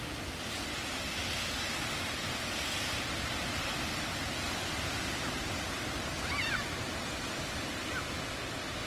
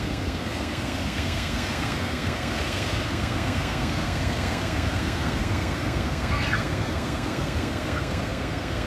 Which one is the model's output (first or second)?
second